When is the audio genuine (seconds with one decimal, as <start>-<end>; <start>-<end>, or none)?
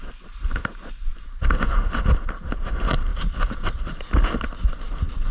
0.0-5.3